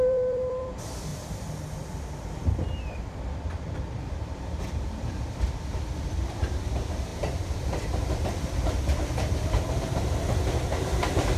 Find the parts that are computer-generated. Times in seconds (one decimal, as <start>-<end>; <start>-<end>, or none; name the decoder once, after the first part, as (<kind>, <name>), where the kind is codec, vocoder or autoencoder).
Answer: 0.0-1.1 (vocoder, BigVGAN v2); 1.7-11.4